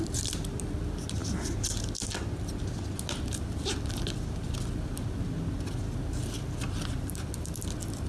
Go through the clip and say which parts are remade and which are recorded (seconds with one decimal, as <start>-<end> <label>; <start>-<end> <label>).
0.0-1.2 remade; 1.2-3.2 recorded; 3.2-8.1 remade